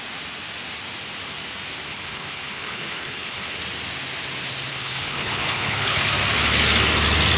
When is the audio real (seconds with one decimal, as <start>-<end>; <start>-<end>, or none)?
0.0-1.9; 3.6-4.7; 6.1-7.4